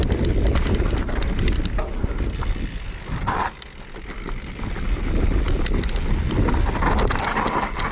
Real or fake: real